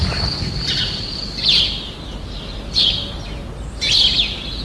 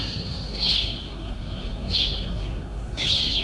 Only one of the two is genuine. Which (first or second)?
first